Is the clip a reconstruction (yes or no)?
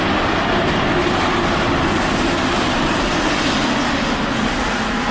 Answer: no